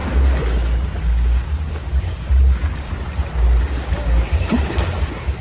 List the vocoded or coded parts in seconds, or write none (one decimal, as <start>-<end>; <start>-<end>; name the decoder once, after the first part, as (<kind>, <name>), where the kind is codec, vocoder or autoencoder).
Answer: 1.0-2.9 (codec, DAC); 3.8-5.4